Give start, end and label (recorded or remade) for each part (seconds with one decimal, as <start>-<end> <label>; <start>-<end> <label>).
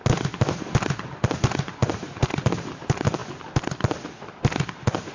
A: 0.0-5.1 recorded